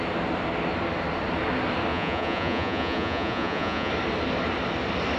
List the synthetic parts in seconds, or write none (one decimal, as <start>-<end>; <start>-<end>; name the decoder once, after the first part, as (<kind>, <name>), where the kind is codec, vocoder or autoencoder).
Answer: 1.9-3.9 (vocoder, Vocos)